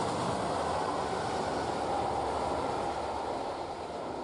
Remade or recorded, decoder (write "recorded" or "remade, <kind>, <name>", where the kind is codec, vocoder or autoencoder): recorded